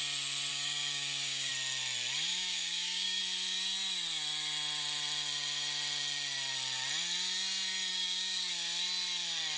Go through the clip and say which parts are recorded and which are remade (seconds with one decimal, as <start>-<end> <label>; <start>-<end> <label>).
0.0-0.5 recorded; 0.5-1.5 remade; 1.5-2.3 recorded; 2.3-3.2 remade; 3.2-7.9 recorded; 7.9-8.5 remade; 8.5-9.6 recorded